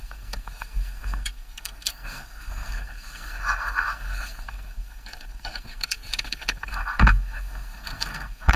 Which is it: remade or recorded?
remade